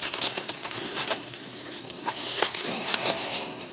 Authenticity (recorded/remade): remade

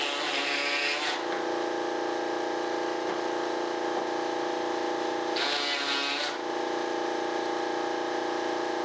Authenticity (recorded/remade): recorded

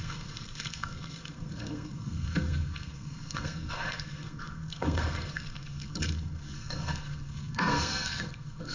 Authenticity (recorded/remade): remade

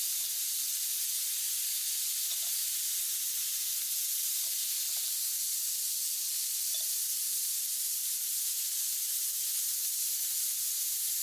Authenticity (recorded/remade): recorded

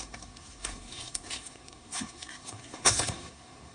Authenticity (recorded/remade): remade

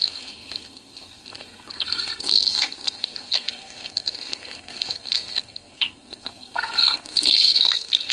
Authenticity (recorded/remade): remade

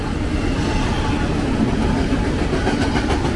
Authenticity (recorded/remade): recorded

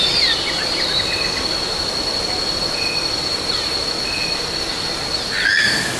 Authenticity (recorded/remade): recorded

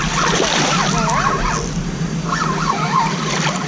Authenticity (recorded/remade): recorded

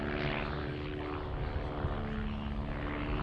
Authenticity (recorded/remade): recorded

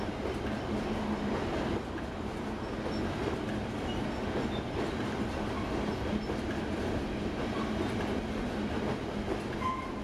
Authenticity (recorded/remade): recorded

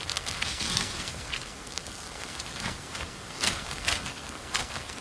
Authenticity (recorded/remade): remade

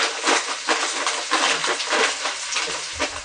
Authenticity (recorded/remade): recorded